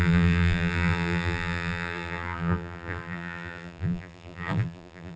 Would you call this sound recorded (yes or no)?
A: no